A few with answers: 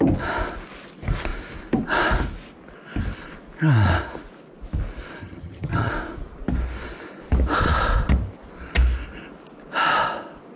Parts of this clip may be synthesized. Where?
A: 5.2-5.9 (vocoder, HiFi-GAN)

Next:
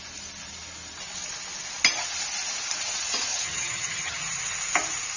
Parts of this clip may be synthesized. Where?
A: 3.3-4.2 (vocoder, HiFi-GAN)

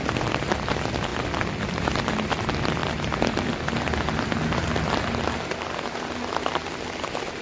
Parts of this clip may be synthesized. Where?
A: none

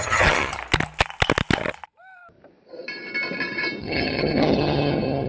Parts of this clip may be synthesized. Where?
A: 0.0-0.6 (vocoder, HiFi-GAN); 3.8-5.3

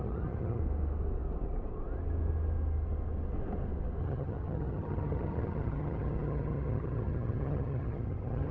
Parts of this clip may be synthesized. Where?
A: 0.0-0.6 (vocoder, HiFi-GAN); 4.0-8.5

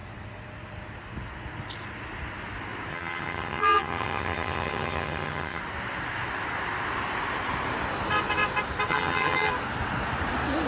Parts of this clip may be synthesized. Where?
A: 2.9-5.6 (vocoder, HiFi-GAN); 8.9-9.5